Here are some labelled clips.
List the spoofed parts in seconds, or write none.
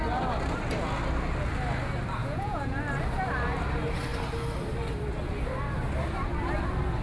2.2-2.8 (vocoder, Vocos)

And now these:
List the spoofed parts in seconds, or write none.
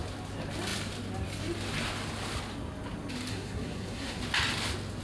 3.3-4.2 (codec, SNAC)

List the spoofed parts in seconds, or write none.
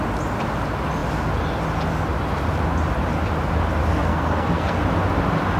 3.9-4.8 (codec, SNAC)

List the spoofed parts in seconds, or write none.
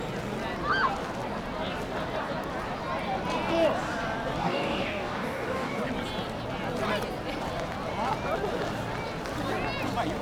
4.4-5.8 (codec, DAC)